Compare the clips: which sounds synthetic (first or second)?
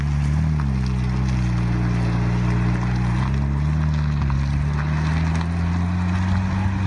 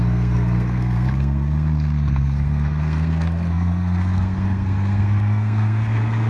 second